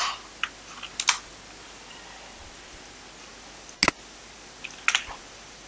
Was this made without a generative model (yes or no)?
yes